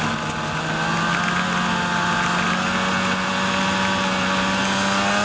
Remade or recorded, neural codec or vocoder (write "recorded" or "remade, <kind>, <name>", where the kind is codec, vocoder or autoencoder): recorded